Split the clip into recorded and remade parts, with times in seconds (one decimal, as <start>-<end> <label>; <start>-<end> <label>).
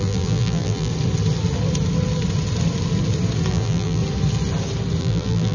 0.0-0.9 remade; 0.9-3.5 recorded; 3.5-4.0 remade; 4.0-5.0 recorded; 5.0-5.5 remade